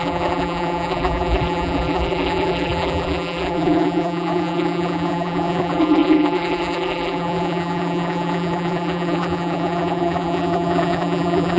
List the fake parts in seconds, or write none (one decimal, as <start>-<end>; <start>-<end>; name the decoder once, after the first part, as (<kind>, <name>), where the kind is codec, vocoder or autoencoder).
0.0-11.6 (vocoder, BigVGAN v2)